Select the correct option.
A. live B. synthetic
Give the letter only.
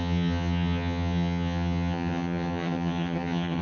B